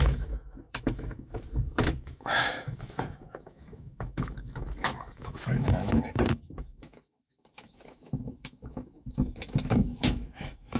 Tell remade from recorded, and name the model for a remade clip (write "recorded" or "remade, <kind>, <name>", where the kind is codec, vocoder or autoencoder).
remade, autoencoder, DAC-VAE